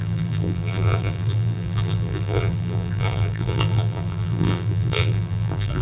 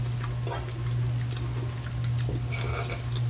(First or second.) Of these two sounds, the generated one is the first